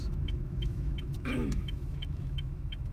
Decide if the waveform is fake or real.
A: fake